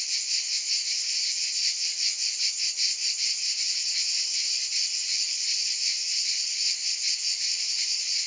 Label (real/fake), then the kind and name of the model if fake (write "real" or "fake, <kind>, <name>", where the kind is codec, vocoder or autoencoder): real